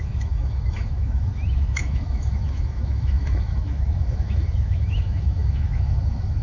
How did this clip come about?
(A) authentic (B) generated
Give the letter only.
B